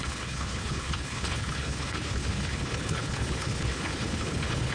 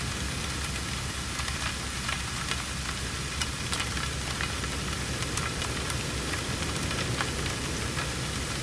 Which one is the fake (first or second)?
first